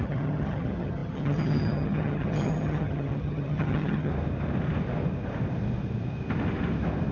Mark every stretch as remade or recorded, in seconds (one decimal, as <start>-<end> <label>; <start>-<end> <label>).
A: 0.0-4.1 remade; 4.1-7.1 recorded